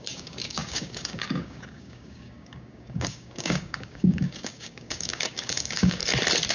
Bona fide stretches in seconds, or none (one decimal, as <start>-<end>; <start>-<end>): 6.0-6.5